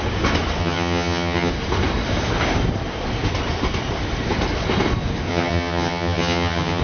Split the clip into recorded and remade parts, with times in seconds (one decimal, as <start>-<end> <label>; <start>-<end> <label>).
0.0-0.6 recorded; 0.6-1.5 remade; 1.5-5.3 recorded; 5.3-6.8 remade